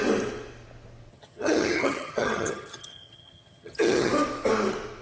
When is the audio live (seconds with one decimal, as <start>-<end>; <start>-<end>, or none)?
0.0-1.1; 4.1-5.0

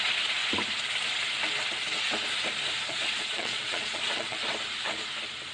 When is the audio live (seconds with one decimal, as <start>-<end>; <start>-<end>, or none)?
0.4-2.8; 4.4-5.5

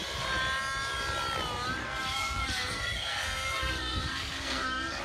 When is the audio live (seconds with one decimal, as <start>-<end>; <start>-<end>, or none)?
0.0-1.8

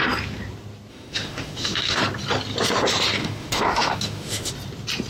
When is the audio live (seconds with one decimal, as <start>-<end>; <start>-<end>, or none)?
0.0-0.9; 2.0-3.2; 4.5-5.1

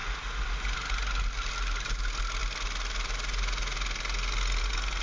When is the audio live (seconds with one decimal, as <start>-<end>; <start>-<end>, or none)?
0.0-5.0

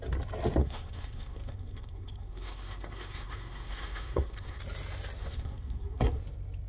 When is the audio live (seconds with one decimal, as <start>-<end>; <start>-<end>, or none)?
0.0-0.6; 4.6-5.2; 6.2-6.7